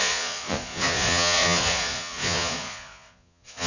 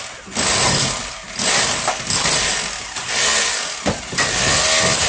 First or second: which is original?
second